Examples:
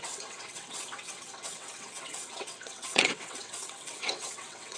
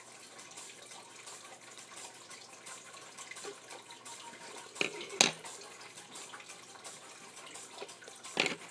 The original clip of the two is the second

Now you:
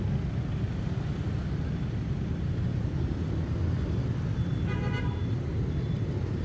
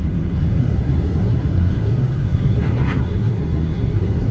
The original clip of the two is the first